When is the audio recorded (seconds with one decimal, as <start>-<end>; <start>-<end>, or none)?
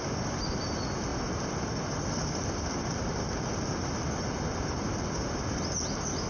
0.0-6.3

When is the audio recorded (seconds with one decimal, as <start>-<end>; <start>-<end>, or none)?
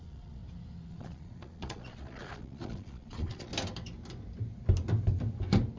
0.4-0.9; 3.5-5.8